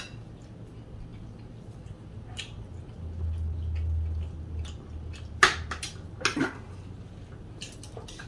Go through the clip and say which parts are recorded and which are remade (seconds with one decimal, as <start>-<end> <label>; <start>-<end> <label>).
0.0-8.3 recorded